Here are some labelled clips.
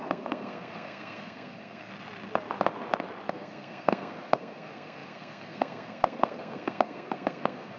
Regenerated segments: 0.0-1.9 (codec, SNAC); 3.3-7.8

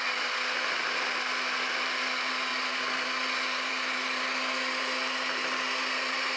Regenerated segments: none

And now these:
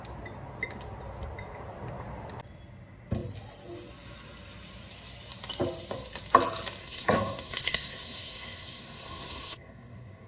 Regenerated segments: 6.8-10.3 (codec, SNAC)

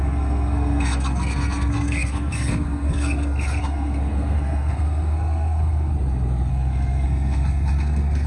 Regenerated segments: 0.0-5.9 (codec, SNAC); 6.5-8.3

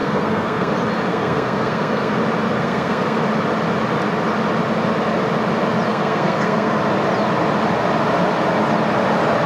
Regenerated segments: 0.0-0.7 (codec, SNAC); 1.1-2.1; 2.6-3.2; 5.9-6.8